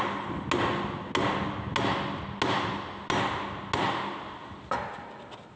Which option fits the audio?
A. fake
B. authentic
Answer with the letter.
B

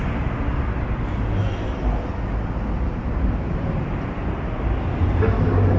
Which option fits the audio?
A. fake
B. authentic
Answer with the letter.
B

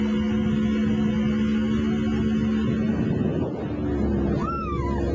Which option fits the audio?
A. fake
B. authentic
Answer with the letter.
B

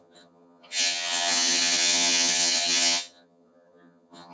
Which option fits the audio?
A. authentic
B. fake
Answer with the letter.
B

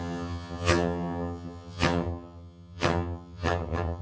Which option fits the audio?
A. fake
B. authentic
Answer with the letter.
A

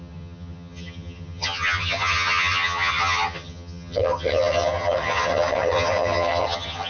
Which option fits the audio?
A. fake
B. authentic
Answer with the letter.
A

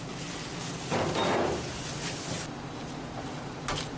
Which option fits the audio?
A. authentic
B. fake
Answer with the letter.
A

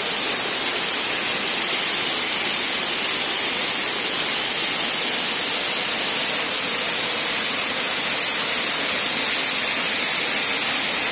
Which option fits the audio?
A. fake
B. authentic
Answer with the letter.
B